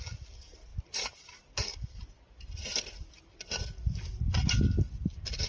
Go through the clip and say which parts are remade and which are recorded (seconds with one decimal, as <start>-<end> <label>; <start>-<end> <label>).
0.0-5.5 recorded